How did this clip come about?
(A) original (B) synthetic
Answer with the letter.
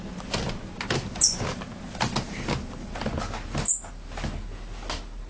A